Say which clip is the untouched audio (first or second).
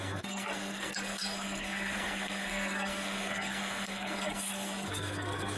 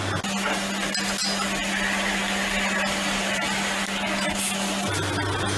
second